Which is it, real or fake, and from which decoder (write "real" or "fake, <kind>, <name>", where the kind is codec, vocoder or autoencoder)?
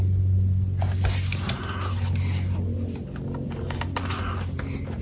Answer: real